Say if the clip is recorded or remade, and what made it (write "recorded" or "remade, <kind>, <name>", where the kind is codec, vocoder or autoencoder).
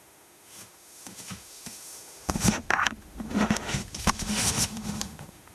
remade, autoencoder, DAC-VAE